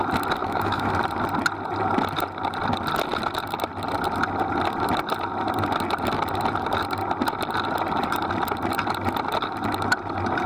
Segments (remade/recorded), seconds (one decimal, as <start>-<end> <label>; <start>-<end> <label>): 0.0-0.4 recorded; 0.4-0.9 remade; 0.9-10.5 recorded